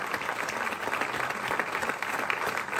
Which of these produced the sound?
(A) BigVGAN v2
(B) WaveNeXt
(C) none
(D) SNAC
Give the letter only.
C